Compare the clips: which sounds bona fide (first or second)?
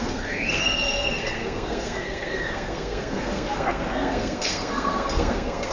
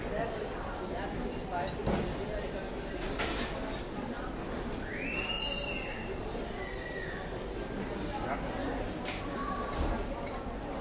second